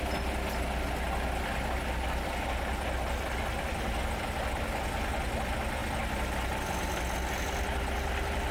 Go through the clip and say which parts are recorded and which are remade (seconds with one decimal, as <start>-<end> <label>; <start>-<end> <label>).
0.0-8.5 recorded